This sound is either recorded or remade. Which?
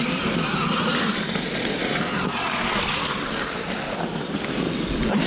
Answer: recorded